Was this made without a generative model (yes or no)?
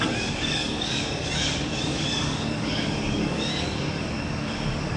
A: no